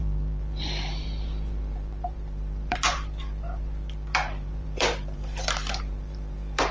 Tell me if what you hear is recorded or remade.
remade